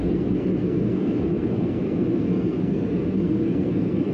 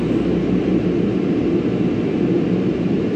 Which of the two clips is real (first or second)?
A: second